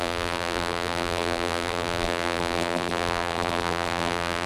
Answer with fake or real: fake